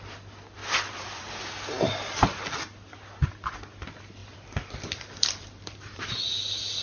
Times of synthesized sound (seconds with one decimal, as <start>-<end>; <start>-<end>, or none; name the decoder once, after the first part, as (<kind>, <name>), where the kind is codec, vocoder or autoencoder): 0.6-1.4 (vocoder, BigVGAN v2); 4.2-6.1